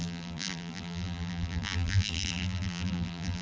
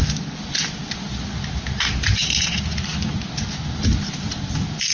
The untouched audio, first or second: second